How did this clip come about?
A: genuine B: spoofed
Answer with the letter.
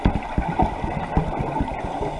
A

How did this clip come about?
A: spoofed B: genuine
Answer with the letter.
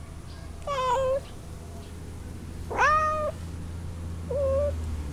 B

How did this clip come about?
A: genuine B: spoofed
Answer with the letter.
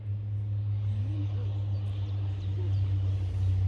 A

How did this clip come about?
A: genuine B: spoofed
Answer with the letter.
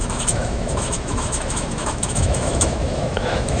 B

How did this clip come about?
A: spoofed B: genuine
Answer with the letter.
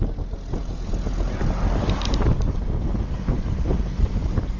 B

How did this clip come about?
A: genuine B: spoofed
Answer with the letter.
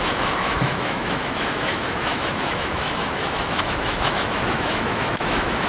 B